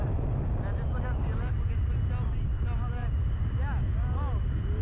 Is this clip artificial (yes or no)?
no